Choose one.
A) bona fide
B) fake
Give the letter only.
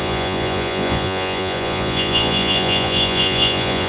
B